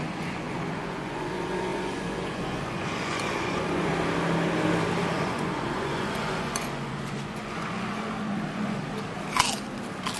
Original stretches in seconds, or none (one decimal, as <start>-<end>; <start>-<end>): 3.9-5.1; 8.8-10.2